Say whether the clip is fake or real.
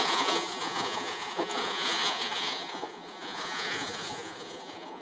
fake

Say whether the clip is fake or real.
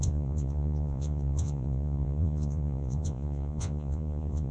fake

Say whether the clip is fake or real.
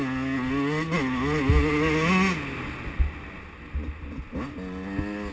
real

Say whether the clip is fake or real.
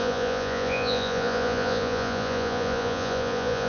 fake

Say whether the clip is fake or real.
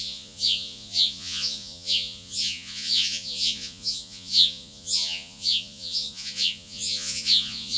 fake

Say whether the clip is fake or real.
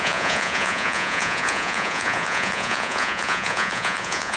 fake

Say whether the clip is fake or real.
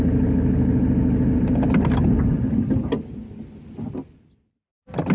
real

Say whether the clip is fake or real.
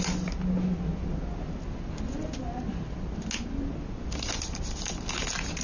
real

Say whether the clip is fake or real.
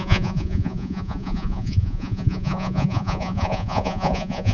fake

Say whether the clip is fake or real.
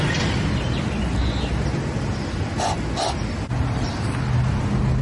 real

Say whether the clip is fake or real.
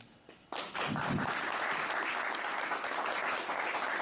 real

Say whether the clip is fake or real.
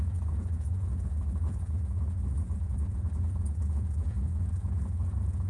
fake